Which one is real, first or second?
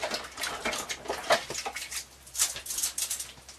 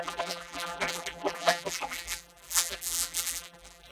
first